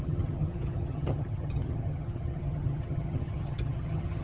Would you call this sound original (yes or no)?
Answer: no